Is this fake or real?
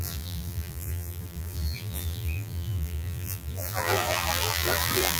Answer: fake